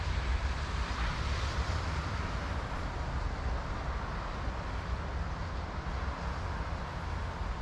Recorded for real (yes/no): yes